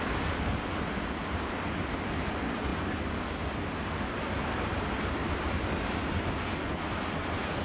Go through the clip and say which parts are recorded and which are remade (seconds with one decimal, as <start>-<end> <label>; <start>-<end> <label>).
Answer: 0.0-7.6 recorded